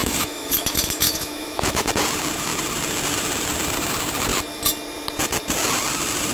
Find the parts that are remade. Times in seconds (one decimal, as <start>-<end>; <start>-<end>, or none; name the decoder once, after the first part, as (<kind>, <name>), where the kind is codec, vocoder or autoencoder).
0.0-1.9 (autoencoder, DAC-VAE)